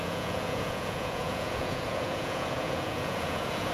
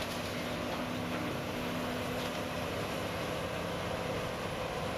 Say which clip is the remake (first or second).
first